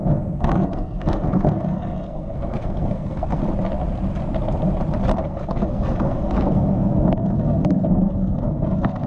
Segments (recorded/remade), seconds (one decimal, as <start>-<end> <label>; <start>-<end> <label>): 0.0-3.4 remade; 3.4-5.2 recorded; 5.2-9.1 remade